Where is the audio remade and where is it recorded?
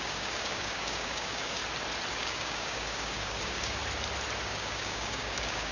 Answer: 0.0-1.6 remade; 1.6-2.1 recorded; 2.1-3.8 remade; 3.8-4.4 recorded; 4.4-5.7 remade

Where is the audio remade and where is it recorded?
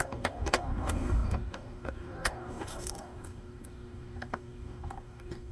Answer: 0.0-5.5 remade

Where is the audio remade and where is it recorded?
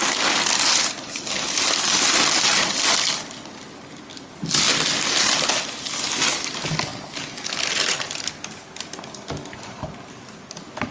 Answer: 0.0-10.9 recorded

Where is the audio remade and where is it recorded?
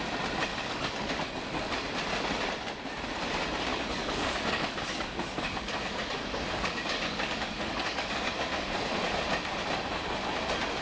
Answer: 0.0-0.5 recorded; 0.5-1.3 remade; 1.3-3.7 recorded; 3.7-8.7 remade; 8.7-10.8 recorded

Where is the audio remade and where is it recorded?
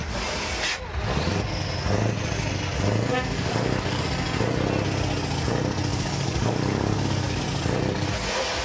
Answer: 0.0-3.1 recorded; 3.1-4.0 remade; 4.0-5.9 recorded; 5.9-7.4 remade; 7.4-8.6 recorded